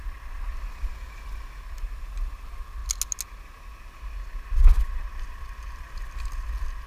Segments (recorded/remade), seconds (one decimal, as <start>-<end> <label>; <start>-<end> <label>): 0.0-0.5 remade; 0.5-1.6 recorded; 1.6-2.8 remade; 2.8-6.9 recorded